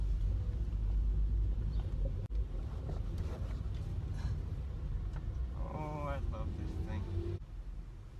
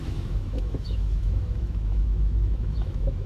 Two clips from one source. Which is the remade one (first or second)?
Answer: second